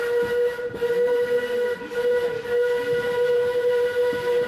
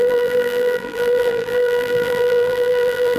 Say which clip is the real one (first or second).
first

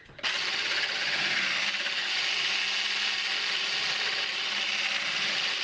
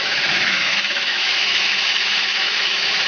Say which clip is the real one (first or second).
first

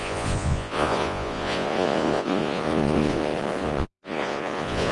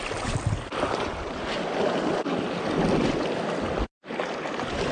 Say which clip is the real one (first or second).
second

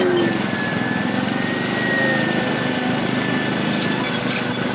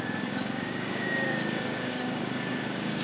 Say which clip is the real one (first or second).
first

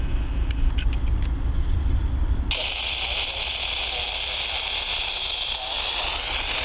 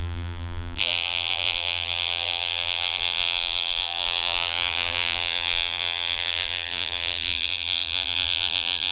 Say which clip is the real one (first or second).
first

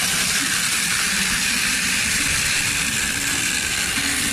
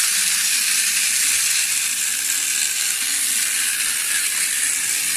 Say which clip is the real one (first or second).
second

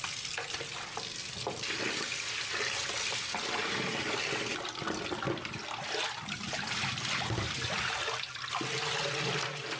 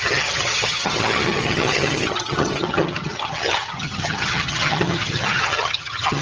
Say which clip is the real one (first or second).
first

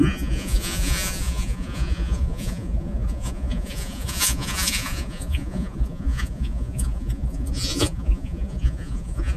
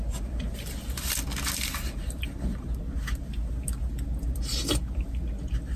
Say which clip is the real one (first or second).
second